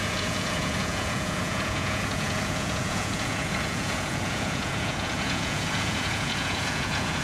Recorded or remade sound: remade